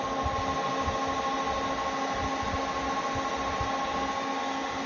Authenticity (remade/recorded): recorded